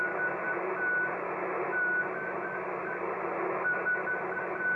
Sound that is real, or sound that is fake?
real